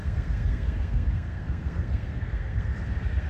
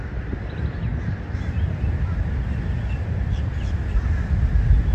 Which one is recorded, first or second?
second